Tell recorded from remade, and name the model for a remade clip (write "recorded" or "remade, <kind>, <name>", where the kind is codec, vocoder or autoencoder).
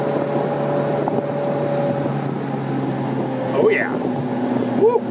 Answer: recorded